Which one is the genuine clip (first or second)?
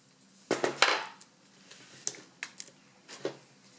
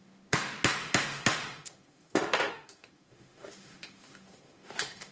first